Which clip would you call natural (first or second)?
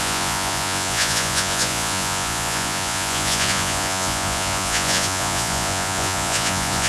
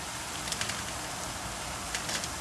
second